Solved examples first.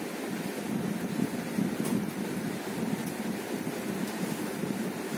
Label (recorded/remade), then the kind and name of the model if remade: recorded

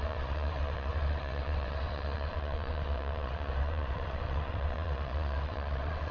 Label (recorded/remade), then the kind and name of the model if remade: remade, vocoder, WaveNeXt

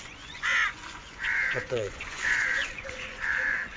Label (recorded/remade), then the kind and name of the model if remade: remade, vocoder, Vocos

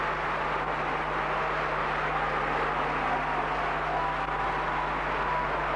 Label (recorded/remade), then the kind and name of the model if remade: recorded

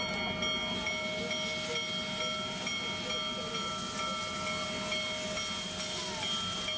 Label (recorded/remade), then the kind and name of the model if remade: recorded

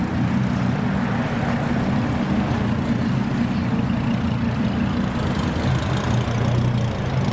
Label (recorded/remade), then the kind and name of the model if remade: recorded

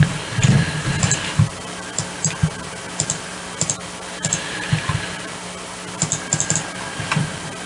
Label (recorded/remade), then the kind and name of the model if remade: recorded